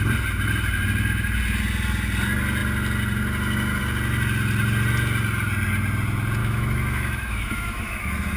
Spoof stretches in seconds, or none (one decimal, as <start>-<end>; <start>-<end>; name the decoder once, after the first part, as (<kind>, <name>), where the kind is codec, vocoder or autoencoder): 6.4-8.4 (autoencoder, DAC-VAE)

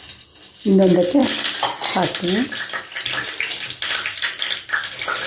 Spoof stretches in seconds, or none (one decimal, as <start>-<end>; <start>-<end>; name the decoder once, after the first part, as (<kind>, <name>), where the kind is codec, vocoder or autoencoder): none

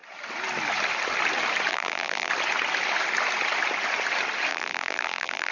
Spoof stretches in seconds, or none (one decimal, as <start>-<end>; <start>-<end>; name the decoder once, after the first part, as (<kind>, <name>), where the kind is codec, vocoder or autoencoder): 1.7-2.3 (vocoder, BigVGAN v2); 4.5-5.5

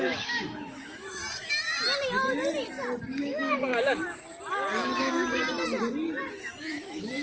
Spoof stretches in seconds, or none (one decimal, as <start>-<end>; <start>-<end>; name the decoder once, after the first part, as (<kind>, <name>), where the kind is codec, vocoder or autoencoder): 0.0-1.2 (autoencoder, DAC-VAE); 3.2-3.7; 6.3-7.2